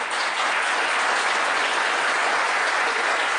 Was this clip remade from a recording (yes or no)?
yes